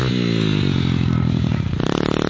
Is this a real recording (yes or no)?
yes